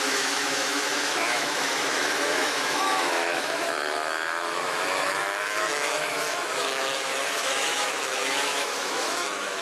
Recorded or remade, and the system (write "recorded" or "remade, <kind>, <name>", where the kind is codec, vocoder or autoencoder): remade, autoencoder, DAC-VAE